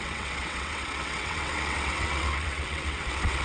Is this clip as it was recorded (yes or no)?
no